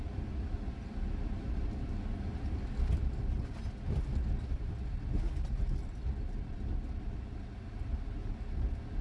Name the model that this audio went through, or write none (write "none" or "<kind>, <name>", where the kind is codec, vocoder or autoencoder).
none